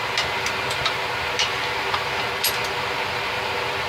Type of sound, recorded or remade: recorded